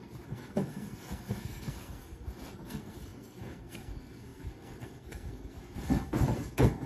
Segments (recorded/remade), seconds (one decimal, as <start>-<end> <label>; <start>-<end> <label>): 0.0-6.9 remade